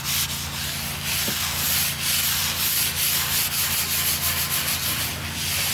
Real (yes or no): yes